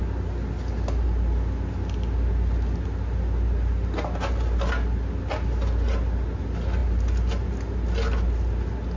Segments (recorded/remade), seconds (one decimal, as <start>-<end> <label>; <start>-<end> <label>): 0.0-9.0 recorded

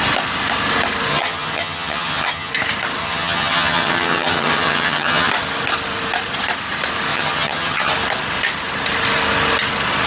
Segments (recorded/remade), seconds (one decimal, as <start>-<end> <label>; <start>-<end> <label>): 0.0-1.1 recorded; 1.1-2.5 remade; 2.5-3.0 recorded; 3.0-5.3 remade; 5.3-7.1 recorded; 7.1-7.9 remade; 7.9-10.1 recorded

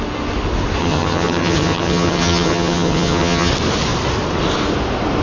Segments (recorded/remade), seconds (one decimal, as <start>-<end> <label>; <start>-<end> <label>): 0.0-0.8 recorded; 0.8-3.5 remade; 3.5-5.2 recorded

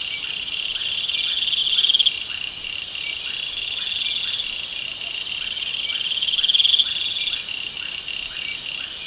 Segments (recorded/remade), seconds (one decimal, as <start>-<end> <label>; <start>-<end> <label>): 0.0-9.1 recorded

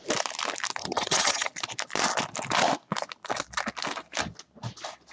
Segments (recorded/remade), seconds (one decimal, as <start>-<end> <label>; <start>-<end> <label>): 0.0-0.8 recorded; 0.8-1.5 remade; 1.5-5.1 recorded

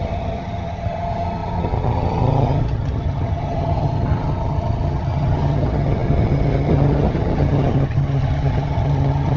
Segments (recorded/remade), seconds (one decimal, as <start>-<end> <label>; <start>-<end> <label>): 0.0-9.4 remade

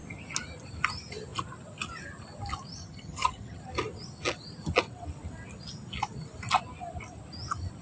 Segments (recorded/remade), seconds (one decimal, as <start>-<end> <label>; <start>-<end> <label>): 0.0-2.8 recorded; 2.8-3.6 remade; 3.6-7.8 recorded